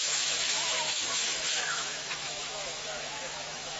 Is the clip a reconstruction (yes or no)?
yes